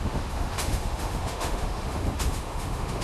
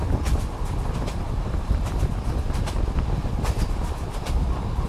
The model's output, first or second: first